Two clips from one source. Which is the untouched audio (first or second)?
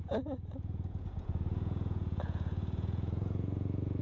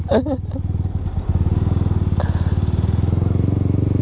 second